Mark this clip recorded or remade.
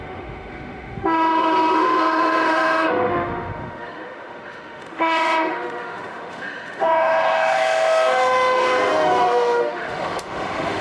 remade